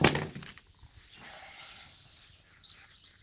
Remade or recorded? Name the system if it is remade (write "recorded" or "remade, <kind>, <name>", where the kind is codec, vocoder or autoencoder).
recorded